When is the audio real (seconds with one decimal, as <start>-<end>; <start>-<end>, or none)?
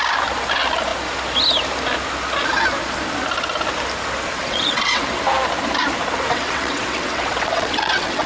0.0-4.4; 5.1-6.3